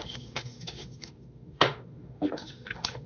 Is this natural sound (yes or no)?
no